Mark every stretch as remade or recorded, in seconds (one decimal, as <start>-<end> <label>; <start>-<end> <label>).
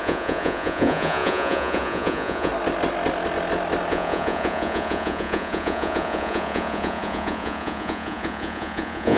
0.0-2.5 remade; 2.5-3.9 recorded; 3.9-9.2 remade